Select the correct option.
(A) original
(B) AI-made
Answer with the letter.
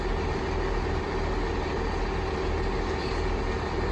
A